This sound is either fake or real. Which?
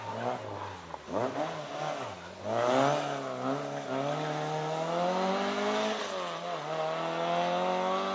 real